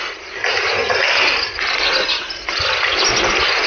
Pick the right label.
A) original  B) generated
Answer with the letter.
B